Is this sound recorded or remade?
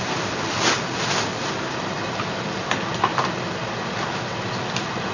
recorded